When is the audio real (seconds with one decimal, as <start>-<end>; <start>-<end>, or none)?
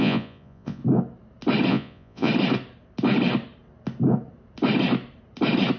0.8-1.7; 2.3-5.8